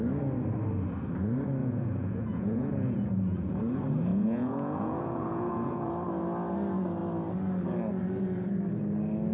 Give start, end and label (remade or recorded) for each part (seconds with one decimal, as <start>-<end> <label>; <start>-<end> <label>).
0.0-1.6 recorded; 1.6-3.6 remade; 3.6-4.1 recorded; 4.1-5.9 remade; 5.9-9.3 recorded